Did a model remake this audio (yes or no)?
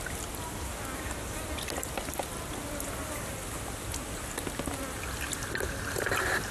no